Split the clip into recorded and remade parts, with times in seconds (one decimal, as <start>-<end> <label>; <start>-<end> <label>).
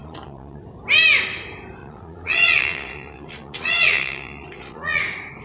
0.0-0.6 remade; 0.6-1.8 recorded; 1.8-5.0 remade; 5.0-5.4 recorded